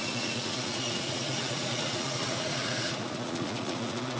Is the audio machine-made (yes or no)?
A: yes